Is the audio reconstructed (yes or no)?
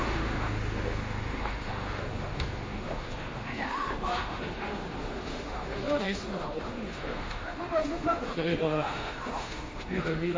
yes